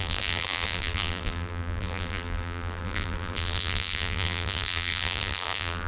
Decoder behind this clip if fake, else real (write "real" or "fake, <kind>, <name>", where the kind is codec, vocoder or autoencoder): fake, vocoder, BigVGAN v2